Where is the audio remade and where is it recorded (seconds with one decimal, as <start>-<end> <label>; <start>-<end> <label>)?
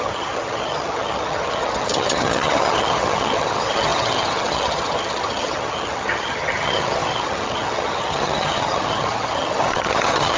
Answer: 0.0-10.4 remade